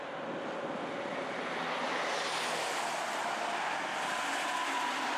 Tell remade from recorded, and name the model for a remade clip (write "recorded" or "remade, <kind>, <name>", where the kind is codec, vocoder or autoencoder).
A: recorded